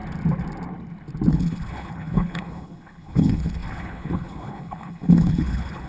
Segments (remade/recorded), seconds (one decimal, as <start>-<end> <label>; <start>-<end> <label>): 0.0-1.3 recorded; 1.3-5.9 remade